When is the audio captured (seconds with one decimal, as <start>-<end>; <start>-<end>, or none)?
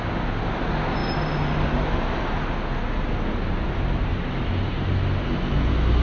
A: 0.0-6.0